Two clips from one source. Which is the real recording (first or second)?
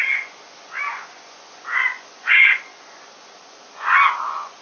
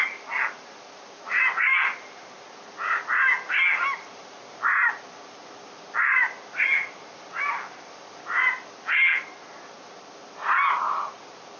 second